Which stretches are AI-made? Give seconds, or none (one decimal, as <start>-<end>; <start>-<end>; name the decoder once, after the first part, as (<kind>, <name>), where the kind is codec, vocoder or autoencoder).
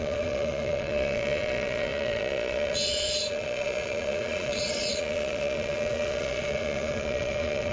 0.0-7.7 (vocoder, Vocos)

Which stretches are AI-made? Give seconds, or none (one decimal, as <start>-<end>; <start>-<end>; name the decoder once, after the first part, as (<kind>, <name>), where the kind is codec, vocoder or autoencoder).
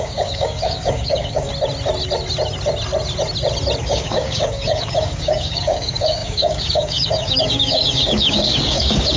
0.0-1.5 (codec, DAC); 3.8-9.2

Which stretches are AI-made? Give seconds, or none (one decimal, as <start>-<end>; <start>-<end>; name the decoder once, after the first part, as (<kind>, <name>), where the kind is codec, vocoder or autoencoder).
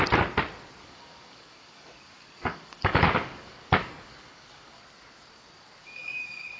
0.8-4.8 (codec, DAC); 5.8-6.6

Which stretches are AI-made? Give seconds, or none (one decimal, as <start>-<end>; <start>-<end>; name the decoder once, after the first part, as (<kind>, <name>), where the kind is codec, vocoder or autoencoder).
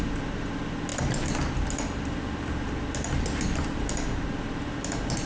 none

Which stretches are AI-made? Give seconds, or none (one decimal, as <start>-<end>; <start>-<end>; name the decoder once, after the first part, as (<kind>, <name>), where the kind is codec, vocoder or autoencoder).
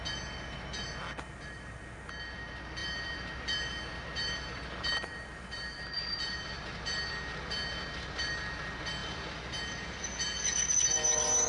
2.8-7.1 (vocoder, BigVGAN v2); 9.0-9.5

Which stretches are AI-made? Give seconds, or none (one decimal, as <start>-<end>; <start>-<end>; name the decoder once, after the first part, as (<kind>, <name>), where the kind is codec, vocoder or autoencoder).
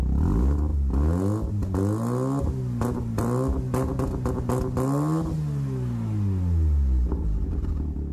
none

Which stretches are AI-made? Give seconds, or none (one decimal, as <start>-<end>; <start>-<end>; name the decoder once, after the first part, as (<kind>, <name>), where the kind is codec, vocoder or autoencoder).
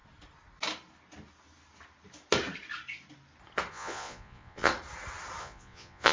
3.7-4.7 (vocoder, Vocos); 5.4-6.1